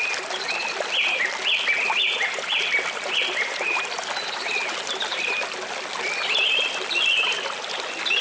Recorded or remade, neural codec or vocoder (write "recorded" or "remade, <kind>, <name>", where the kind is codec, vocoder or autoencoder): recorded